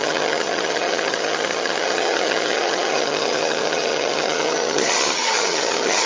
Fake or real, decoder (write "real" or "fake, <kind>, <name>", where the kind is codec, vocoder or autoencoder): fake, vocoder, HiFi-GAN